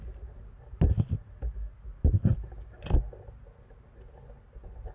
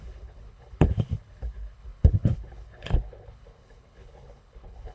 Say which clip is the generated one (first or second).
second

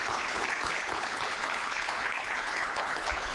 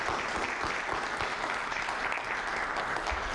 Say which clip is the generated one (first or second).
first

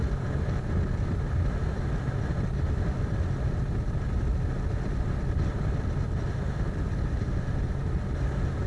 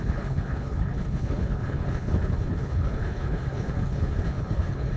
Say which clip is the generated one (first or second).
second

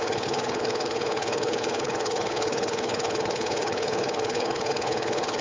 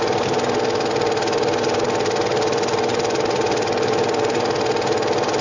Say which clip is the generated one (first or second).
first